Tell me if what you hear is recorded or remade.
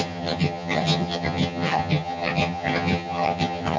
remade